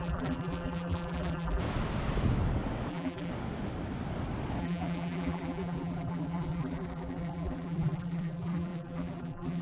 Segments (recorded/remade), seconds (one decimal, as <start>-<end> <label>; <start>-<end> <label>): 0.0-1.6 remade; 1.6-2.9 recorded; 2.9-3.3 remade; 3.3-4.6 recorded; 4.6-9.6 remade